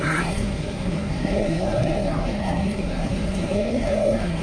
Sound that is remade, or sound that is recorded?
remade